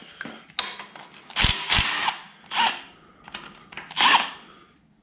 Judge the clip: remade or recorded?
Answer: recorded